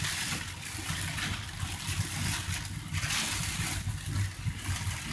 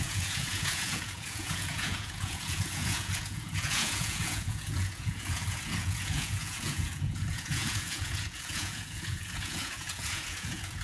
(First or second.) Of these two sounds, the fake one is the second